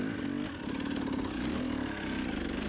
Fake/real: real